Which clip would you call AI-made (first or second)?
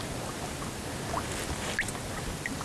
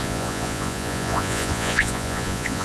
second